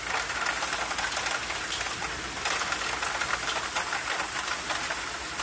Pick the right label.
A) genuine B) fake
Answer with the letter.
A